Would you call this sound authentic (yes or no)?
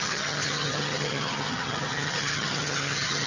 no